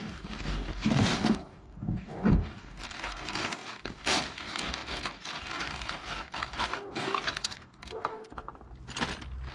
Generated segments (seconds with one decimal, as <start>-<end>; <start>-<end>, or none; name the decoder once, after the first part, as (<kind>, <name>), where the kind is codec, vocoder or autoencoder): 0.0-8.5 (codec, DAC)